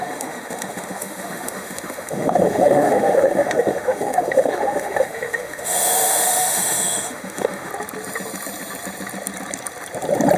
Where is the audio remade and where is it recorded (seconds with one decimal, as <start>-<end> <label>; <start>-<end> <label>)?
0.0-7.7 remade; 7.7-10.4 recorded